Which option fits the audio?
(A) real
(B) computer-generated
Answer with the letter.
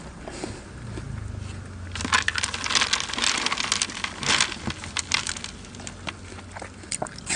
A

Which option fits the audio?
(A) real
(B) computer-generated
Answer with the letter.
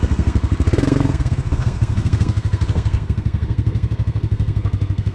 B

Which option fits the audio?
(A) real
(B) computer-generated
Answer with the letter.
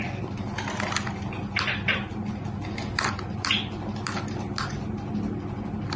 A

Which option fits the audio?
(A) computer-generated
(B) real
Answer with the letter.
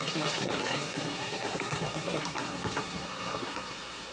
A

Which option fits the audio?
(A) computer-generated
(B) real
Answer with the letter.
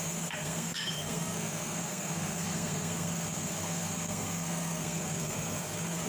A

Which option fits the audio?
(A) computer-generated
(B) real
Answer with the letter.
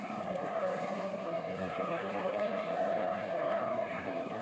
A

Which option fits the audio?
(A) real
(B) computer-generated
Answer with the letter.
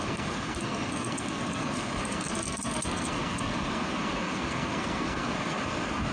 B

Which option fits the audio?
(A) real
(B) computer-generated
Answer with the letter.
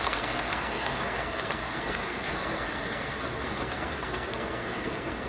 B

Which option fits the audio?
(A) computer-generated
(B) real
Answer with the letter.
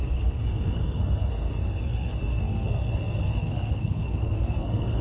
A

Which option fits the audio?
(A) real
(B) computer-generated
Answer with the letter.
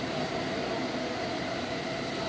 A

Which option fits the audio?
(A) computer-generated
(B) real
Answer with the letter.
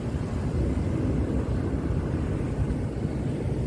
B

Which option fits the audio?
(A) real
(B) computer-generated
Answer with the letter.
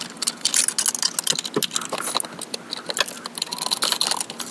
A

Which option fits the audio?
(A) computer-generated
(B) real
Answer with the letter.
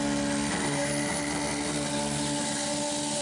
B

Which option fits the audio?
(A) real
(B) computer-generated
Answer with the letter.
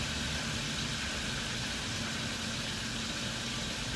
A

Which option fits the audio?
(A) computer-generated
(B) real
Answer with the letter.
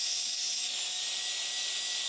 B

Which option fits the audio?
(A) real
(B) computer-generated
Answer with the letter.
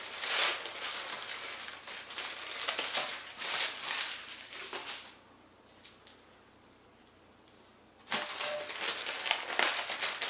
A